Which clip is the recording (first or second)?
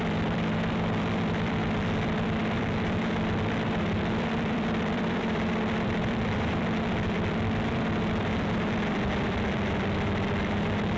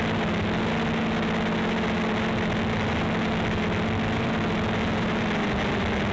second